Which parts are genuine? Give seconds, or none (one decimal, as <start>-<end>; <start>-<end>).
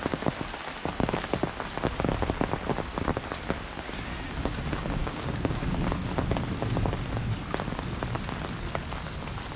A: 0.0-5.0; 5.6-9.6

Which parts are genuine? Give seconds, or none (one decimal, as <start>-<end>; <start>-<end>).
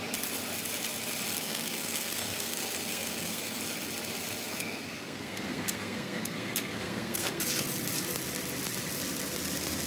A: 0.0-1.3; 3.6-4.4; 7.4-9.9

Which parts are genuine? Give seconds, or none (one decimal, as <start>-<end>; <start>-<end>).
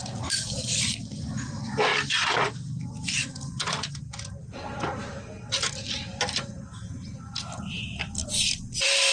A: 1.9-3.2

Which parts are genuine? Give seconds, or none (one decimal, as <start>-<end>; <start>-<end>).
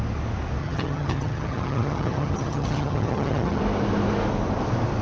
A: 0.0-0.6; 3.6-5.0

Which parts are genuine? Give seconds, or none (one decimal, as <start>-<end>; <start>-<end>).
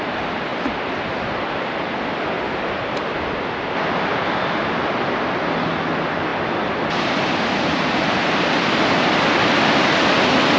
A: 0.0-10.6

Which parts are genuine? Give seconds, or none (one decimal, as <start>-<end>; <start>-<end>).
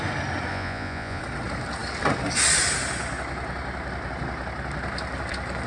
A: 0.0-0.5; 1.2-5.7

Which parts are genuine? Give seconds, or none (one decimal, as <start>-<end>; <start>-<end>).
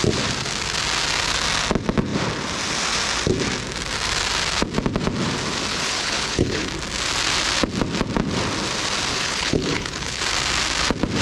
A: 0.0-5.7; 6.7-9.1; 10.2-11.2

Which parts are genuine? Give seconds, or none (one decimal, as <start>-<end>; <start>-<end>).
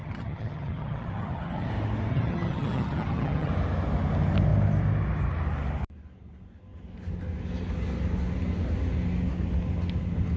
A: 1.7-2.1; 3.5-10.4